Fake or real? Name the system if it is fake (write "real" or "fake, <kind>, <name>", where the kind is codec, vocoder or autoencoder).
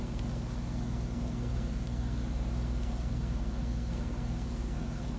fake, codec, SNAC